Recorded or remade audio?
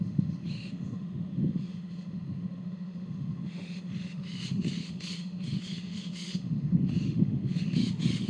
remade